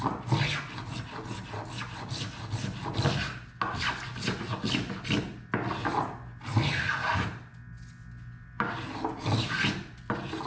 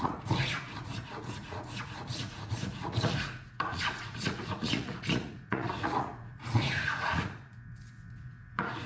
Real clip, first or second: first